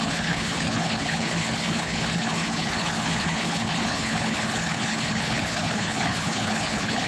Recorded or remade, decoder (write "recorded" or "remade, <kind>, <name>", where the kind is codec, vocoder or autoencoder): remade, codec, HILCodec